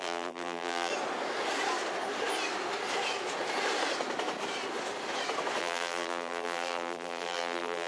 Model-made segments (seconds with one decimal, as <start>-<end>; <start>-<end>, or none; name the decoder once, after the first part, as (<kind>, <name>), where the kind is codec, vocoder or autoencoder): 0.0-0.9 (vocoder, BigVGAN v2); 5.6-7.9